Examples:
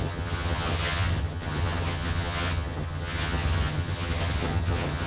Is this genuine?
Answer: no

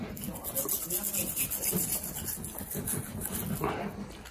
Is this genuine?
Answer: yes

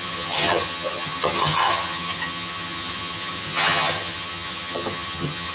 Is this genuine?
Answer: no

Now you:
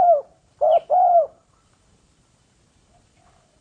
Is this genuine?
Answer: no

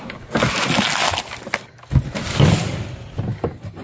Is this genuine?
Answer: yes